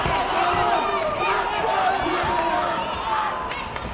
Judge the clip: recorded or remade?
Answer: recorded